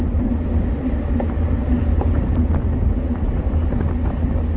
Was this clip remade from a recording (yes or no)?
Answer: no